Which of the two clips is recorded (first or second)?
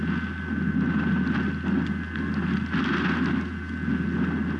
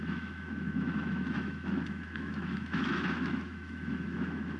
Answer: first